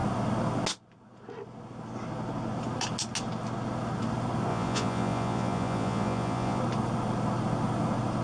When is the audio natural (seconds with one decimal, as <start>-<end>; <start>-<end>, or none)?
0.0-4.5; 6.6-8.2